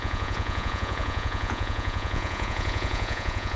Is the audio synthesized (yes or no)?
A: yes